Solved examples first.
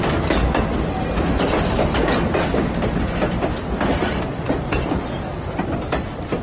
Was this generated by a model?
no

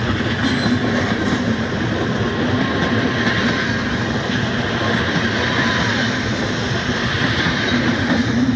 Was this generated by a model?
no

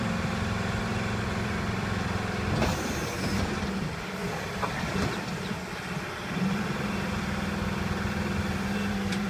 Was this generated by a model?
yes